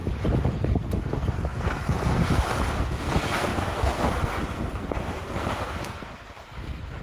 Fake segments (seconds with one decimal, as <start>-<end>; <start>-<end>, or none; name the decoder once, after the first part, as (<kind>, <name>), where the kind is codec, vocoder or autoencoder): 0.5-7.0 (codec, SNAC)

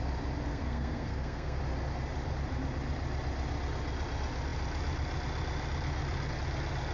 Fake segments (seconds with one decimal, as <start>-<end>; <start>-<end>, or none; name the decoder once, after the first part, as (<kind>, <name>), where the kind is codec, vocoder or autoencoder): 0.5-1.6 (codec, SNAC)

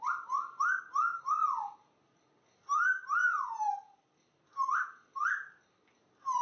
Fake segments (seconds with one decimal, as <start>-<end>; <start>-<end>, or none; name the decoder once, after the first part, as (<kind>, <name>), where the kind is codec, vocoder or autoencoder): 0.9-2.2 (vocoder, BigVGAN v2); 3.6-5.2

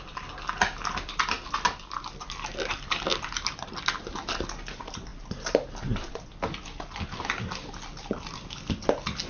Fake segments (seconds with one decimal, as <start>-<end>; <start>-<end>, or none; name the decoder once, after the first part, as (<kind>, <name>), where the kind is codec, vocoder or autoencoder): none

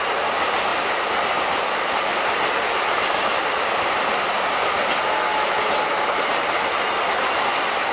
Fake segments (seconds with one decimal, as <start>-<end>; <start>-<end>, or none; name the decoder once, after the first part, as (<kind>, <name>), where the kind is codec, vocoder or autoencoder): 0.7-1.6 (vocoder, BigVGAN v2); 2.1-4.4

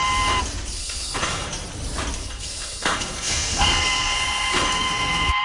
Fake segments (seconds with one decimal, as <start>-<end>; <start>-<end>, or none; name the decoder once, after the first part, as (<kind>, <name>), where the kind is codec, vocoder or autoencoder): 0.8-1.5 (codec, SNAC); 2.2-5.4

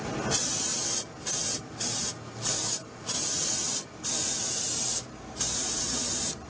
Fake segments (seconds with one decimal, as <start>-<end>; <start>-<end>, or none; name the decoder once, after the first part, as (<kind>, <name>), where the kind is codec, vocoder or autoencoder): none

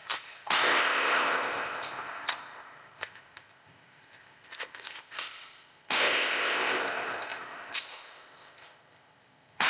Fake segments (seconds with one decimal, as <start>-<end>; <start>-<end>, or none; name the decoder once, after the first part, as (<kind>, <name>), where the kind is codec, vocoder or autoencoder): 0.0-9.7 (codec, ZipCodec)